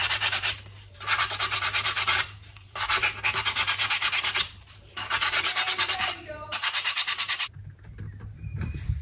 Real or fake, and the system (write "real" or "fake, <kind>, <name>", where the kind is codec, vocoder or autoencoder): fake, vocoder, BigVGAN v2